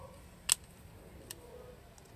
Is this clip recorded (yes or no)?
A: yes